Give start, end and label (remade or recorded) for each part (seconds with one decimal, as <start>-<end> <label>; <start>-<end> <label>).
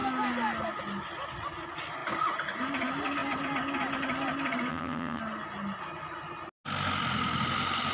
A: 0.0-4.7 recorded; 4.7-5.2 remade; 5.2-7.9 recorded